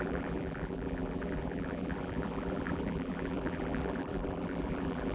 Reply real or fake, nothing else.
fake